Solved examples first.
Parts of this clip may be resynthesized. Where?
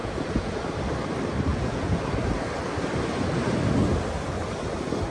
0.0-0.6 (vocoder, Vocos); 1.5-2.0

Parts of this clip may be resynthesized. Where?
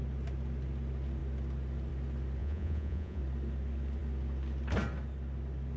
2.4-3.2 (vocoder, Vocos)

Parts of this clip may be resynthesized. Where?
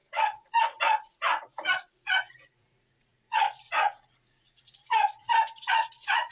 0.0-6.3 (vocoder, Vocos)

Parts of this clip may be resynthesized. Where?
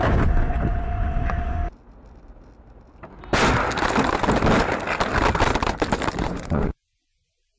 0.0-1.6 (vocoder, Vocos); 6.2-7.6